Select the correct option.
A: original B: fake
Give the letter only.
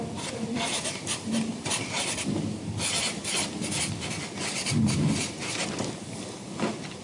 B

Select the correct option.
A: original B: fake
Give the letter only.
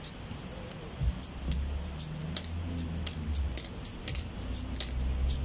A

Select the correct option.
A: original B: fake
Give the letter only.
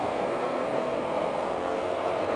B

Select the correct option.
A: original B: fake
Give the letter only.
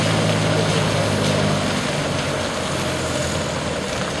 A